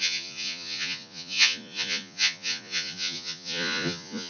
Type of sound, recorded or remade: remade